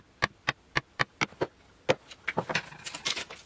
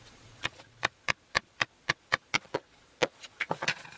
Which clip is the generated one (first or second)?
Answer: second